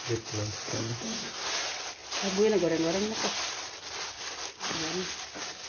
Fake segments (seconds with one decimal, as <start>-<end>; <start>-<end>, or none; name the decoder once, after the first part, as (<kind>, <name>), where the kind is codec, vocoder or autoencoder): 0.7-1.5 (codec, SNAC)